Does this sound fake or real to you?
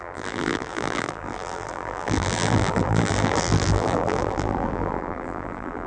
fake